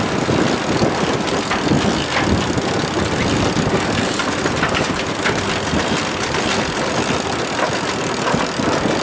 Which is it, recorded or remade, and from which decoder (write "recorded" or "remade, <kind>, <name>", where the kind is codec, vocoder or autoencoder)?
recorded